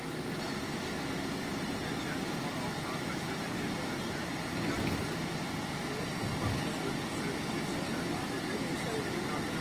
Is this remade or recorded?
recorded